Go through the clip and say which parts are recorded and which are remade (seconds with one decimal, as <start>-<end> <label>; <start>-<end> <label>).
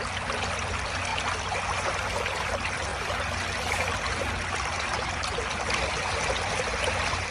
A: 0.0-7.3 recorded